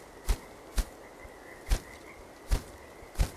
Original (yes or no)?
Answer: yes